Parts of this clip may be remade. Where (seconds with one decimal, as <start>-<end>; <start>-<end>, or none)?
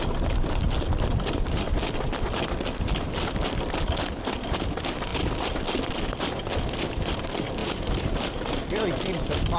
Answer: 7.6-8.6